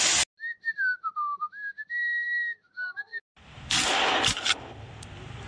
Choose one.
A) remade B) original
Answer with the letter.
B